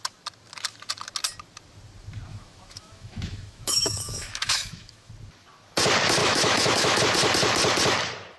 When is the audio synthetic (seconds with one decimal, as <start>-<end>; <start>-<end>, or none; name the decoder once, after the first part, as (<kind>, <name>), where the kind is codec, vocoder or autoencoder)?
2.3-5.1 (autoencoder, DAC-VAE); 6.2-7.0